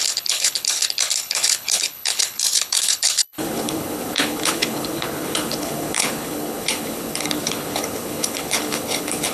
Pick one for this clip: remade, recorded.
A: remade